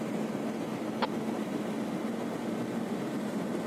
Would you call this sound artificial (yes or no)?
no